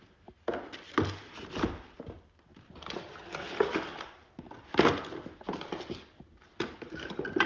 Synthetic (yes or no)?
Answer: no